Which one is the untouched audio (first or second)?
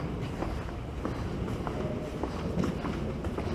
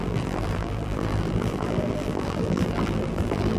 first